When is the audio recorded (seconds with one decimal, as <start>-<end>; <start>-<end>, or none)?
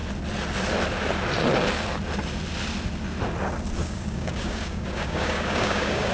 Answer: 0.0-3.8